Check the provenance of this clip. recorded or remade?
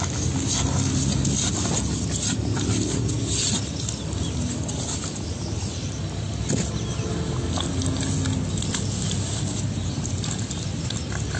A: recorded